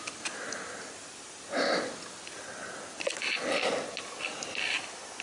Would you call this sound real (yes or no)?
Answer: yes